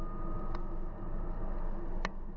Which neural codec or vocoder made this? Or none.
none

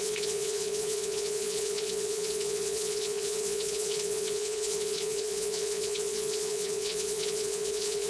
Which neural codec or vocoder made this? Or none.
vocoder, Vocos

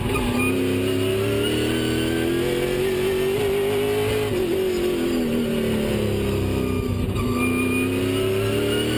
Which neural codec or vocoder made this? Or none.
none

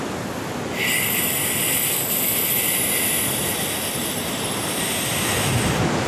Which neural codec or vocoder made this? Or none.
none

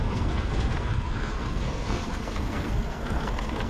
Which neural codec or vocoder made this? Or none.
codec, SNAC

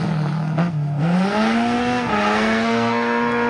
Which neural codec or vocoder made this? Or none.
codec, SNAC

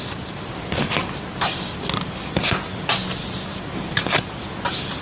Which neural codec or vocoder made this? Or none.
none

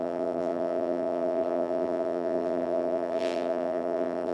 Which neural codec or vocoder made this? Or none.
vocoder, BigVGAN v2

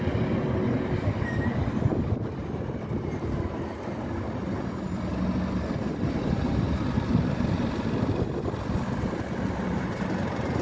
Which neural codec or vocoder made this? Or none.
none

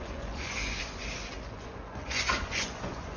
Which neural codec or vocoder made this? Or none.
vocoder, Vocos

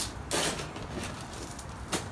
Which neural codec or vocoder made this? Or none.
none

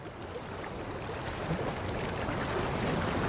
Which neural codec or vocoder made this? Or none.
none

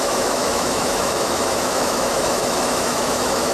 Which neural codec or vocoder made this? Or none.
autoencoder, DAC-VAE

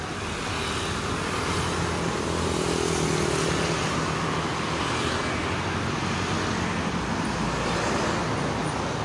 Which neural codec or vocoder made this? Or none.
none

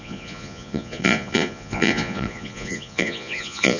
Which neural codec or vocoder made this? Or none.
vocoder, Vocos